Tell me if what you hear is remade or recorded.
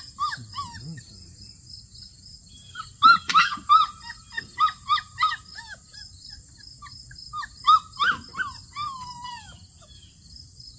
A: recorded